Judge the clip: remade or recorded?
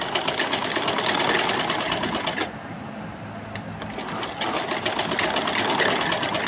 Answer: recorded